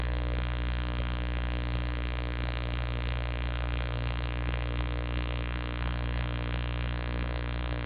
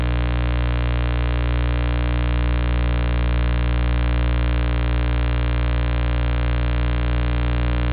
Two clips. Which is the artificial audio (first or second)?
first